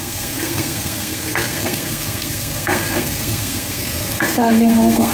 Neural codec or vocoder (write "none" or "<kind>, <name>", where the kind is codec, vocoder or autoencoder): codec, SNAC